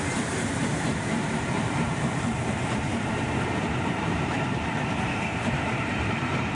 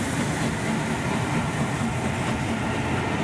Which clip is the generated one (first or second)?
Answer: first